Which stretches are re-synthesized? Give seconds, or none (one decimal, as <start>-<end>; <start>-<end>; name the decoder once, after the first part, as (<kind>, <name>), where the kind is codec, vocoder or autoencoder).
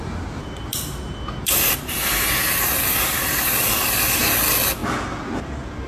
0.7-4.2 (vocoder, BigVGAN v2)